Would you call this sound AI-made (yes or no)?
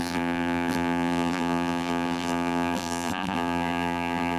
yes